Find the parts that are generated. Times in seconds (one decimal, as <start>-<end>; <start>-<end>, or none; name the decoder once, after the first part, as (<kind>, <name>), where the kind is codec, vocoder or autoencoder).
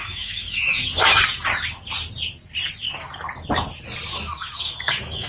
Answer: 0.0-1.2 (autoencoder, DAC-VAE); 4.1-5.3